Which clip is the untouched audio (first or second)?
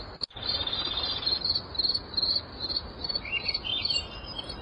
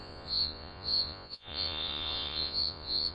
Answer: first